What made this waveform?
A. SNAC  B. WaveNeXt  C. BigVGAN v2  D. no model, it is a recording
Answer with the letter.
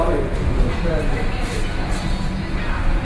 D